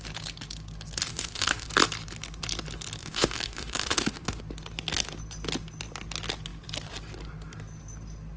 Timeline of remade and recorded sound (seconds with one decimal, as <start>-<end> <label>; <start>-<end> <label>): 0.0-1.1 recorded; 1.1-1.7 remade; 1.7-3.0 recorded; 3.0-4.4 remade; 4.4-8.4 recorded